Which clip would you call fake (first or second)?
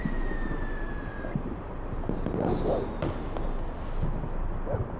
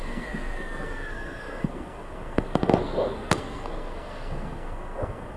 second